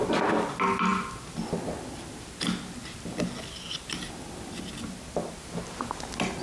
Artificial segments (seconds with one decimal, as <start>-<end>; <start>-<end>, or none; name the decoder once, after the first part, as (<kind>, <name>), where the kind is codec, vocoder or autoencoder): none